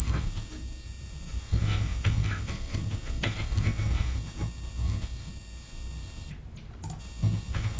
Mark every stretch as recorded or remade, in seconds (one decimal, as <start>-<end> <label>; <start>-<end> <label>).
0.0-6.3 remade; 6.3-7.0 recorded; 7.0-7.8 remade